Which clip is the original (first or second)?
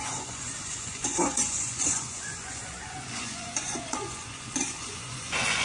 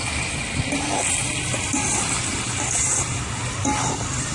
second